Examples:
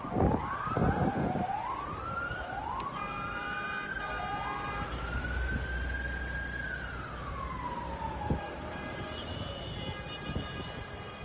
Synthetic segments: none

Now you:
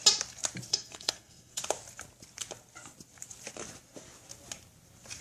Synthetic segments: 0.7-1.6